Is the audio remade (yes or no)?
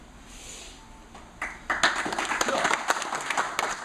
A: no